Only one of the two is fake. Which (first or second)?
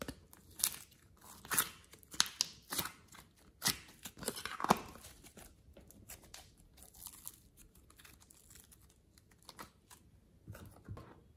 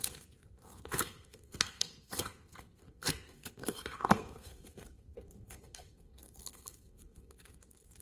second